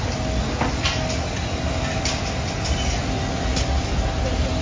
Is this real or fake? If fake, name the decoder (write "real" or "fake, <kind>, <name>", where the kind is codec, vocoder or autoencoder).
real